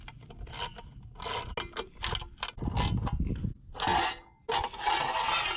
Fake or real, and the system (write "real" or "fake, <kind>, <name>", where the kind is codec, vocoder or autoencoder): real